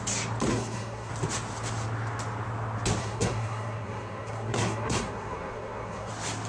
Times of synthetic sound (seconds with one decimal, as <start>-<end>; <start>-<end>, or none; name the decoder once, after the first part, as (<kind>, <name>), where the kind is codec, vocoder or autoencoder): 0.5-1.1 (codec, SNAC); 3.0-6.1